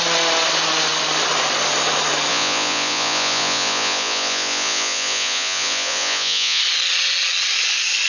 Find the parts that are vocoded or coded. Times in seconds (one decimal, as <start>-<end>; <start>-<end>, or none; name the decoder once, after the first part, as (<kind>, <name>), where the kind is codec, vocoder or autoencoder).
2.3-6.6 (vocoder, Vocos)